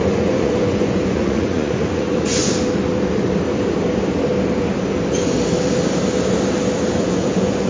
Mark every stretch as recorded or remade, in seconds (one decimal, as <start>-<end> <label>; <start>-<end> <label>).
0.0-2.4 remade; 2.4-7.0 recorded; 7.0-7.7 remade

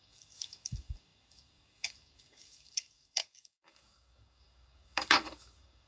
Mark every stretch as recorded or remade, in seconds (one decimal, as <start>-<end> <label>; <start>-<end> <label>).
0.0-5.9 remade

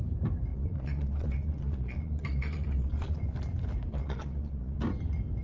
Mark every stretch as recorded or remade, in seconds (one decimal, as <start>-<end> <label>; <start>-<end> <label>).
0.0-0.5 recorded; 0.5-3.2 remade; 3.2-3.9 recorded; 3.9-4.8 remade; 4.8-5.4 recorded

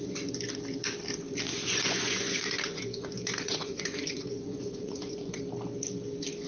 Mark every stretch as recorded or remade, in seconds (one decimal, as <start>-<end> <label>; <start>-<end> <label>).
0.0-1.5 recorded; 1.5-5.4 remade; 5.4-6.5 recorded